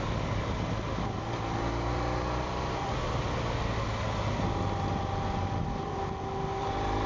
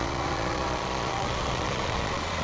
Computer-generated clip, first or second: second